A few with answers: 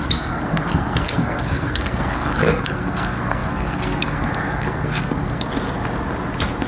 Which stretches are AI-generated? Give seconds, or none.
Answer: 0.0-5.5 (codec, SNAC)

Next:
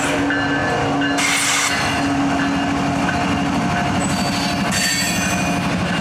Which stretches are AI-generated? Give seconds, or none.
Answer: none